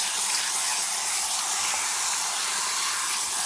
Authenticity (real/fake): real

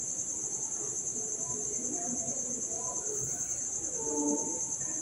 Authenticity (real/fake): real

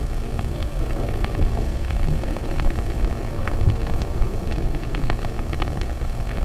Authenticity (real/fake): fake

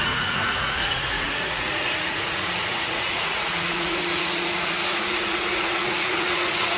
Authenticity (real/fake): fake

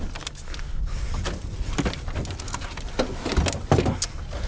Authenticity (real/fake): real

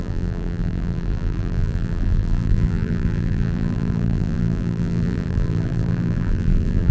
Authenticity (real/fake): fake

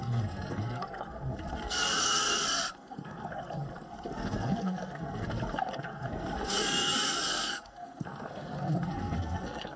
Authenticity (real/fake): fake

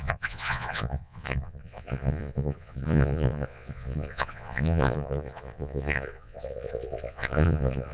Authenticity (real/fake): fake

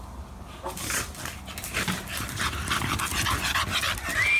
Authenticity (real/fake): real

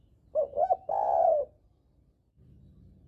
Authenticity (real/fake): real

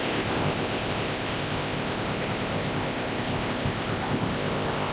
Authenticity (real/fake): fake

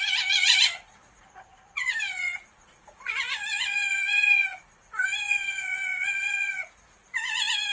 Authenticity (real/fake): fake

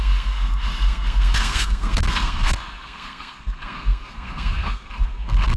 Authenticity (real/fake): fake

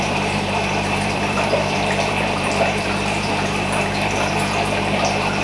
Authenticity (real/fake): fake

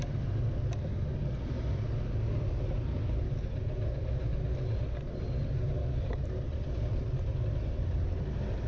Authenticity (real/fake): real